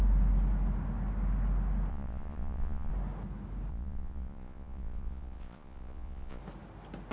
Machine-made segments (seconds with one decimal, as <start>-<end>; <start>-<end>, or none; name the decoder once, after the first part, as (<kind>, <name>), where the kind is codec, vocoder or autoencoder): 1.9-2.9 (vocoder, Vocos); 3.7-6.4